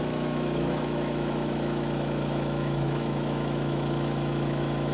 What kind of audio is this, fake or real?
fake